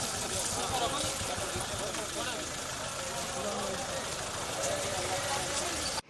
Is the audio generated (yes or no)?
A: no